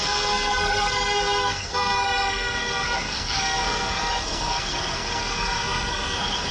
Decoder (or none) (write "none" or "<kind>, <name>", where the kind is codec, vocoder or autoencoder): codec, SNAC